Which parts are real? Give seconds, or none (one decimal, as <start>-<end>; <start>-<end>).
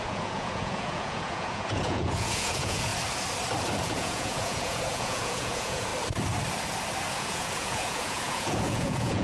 2.9-3.8; 5.9-7.1